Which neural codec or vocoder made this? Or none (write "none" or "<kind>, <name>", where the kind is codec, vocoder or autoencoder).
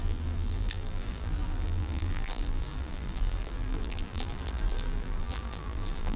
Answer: vocoder, BigVGAN v2